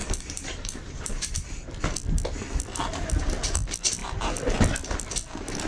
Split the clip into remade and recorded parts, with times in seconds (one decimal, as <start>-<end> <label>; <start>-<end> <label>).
0.0-1.5 remade; 1.5-5.7 recorded